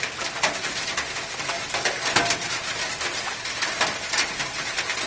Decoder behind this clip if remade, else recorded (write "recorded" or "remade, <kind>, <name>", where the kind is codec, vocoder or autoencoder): remade, vocoder, BigVGAN v2